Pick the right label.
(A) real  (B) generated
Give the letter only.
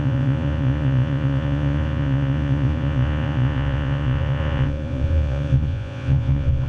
B